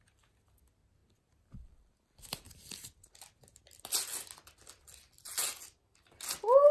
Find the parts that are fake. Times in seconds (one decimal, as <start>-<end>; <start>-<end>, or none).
none